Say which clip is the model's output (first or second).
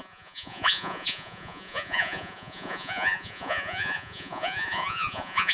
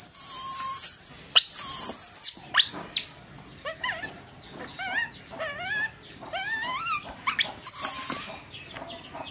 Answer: first